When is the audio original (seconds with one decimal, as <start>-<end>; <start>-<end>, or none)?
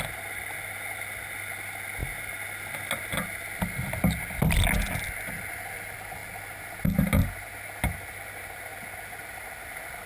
0.0-10.1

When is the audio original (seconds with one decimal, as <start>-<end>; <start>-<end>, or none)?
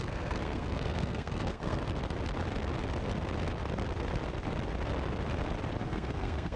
1.8-5.8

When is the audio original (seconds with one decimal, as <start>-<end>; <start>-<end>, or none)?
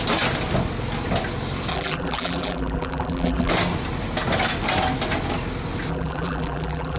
0.0-1.7; 3.5-5.9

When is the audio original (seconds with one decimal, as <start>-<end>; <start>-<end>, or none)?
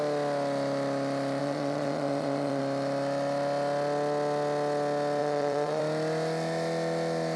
0.0-1.4; 2.6-5.2; 5.8-7.4